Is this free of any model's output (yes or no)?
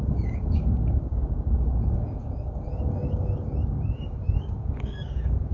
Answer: no